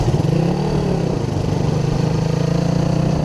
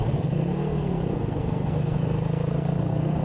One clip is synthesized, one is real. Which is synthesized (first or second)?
second